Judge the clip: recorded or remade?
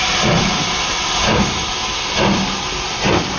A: recorded